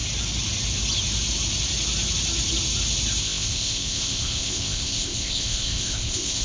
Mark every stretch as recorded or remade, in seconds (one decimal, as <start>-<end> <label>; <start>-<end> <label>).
0.0-3.2 recorded; 3.2-6.4 remade

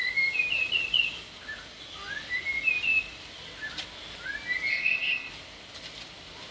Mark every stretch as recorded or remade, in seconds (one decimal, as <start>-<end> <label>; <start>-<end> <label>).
0.0-4.7 recorded; 4.7-5.3 remade; 5.3-6.5 recorded

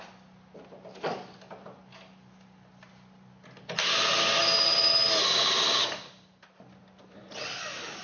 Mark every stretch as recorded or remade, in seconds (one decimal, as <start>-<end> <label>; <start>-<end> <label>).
0.0-8.0 recorded

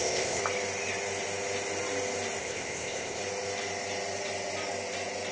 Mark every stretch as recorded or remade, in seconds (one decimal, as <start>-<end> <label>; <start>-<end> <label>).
0.0-0.4 remade; 0.4-2.4 recorded; 2.4-3.2 remade; 3.2-5.3 recorded

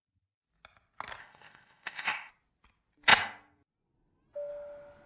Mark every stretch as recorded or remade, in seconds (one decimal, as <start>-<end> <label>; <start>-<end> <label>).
0.0-1.2 recorded; 1.2-2.3 remade; 2.3-5.1 recorded